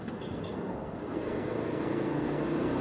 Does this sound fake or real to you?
fake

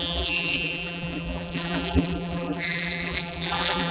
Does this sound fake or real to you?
fake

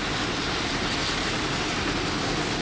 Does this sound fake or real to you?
real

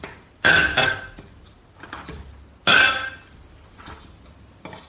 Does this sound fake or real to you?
real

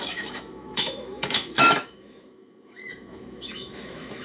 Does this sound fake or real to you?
fake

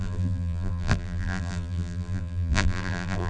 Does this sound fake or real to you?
fake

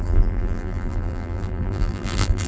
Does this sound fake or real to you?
fake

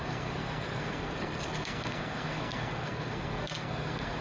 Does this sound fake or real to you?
fake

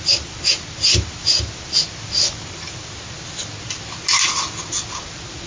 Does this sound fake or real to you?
real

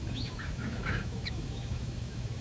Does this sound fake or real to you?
fake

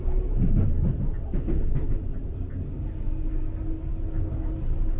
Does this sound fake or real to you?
real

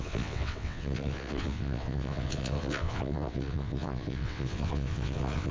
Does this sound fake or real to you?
fake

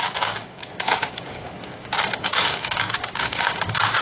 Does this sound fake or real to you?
fake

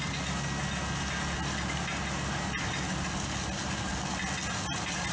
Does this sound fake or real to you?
real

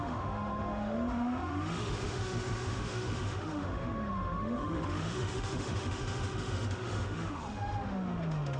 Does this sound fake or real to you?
fake